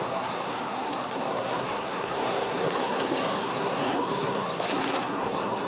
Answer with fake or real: fake